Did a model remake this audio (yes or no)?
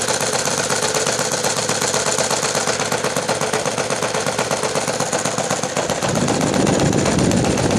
no